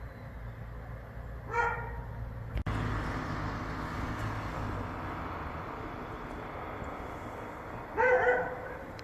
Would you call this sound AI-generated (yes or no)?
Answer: no